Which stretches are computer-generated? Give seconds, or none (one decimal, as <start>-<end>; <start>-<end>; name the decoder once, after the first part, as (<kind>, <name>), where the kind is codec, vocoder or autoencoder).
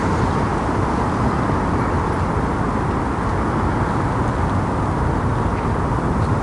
none